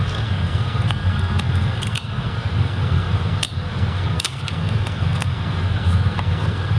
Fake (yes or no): yes